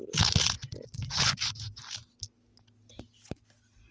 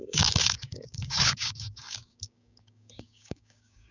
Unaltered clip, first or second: first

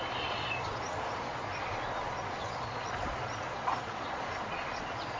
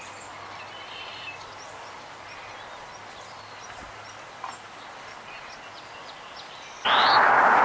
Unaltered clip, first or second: second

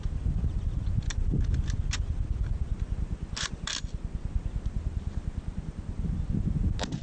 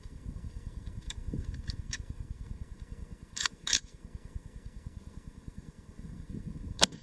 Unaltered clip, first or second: first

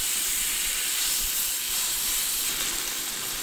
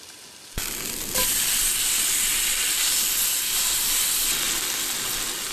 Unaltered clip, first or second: second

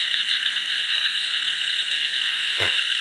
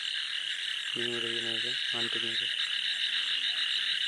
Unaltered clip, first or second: second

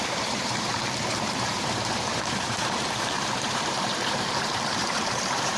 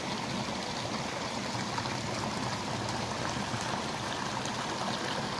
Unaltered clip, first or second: second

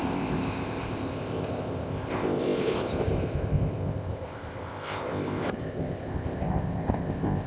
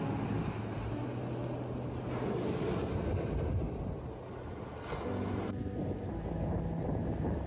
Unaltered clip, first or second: second